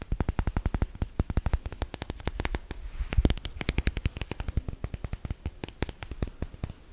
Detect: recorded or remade recorded